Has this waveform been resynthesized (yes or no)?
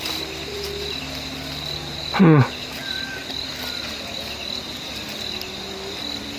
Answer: no